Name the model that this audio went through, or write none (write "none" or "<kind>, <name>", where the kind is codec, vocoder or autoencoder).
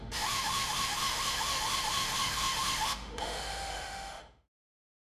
autoencoder, DAC-VAE